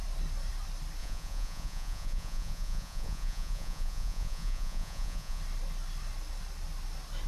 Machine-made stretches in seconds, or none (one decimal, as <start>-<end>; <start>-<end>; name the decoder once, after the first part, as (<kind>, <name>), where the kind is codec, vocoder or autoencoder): 1.0-5.4 (vocoder, Vocos)